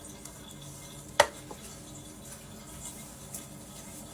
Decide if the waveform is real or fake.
real